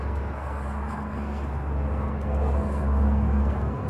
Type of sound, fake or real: fake